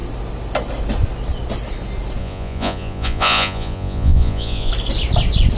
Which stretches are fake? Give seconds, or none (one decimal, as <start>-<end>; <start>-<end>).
2.2-4.7